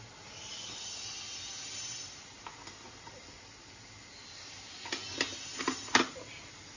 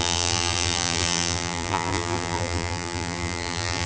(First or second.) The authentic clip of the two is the first